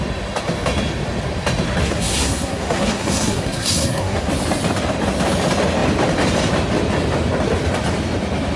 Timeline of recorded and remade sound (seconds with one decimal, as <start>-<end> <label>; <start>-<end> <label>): 0.0-1.8 recorded; 1.8-4.3 remade; 4.3-8.6 recorded